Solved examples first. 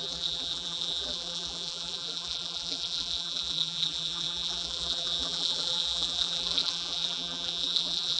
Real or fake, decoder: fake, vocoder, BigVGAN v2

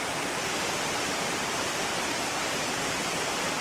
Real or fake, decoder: fake, vocoder, BigVGAN v2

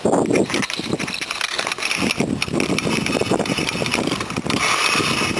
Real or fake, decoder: real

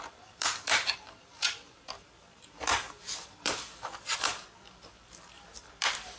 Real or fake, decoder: fake, vocoder, BigVGAN v2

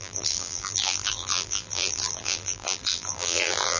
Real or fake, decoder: fake, vocoder, BigVGAN v2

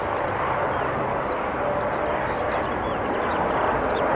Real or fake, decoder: real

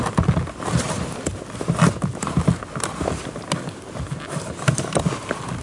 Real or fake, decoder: real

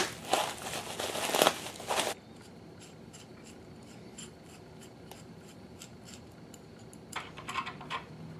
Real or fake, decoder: real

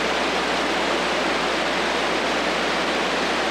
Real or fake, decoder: real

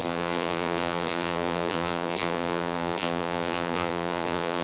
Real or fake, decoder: fake, vocoder, BigVGAN v2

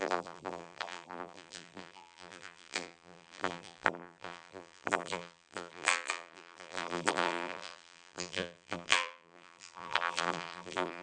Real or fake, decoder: fake, vocoder, BigVGAN v2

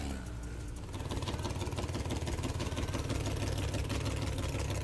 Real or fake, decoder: real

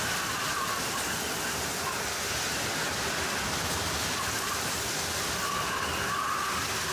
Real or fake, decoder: real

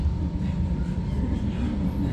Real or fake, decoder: real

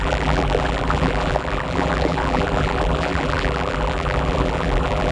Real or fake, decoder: fake, vocoder, BigVGAN v2